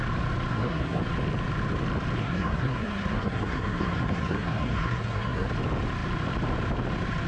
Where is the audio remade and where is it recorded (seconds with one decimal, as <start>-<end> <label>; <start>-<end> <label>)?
0.0-0.5 recorded; 0.5-1.0 remade; 1.0-2.2 recorded; 2.2-5.5 remade; 5.5-7.3 recorded